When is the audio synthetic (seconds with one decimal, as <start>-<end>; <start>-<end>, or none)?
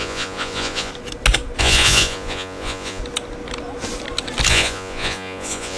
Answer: 0.0-0.9; 1.6-3.0; 4.5-5.8